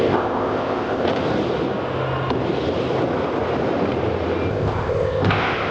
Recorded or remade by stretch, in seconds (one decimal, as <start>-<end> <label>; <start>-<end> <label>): 0.0-1.1 remade; 1.1-4.5 recorded; 4.5-5.7 remade